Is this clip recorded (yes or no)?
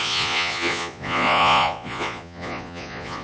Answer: no